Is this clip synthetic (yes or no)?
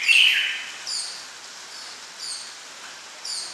no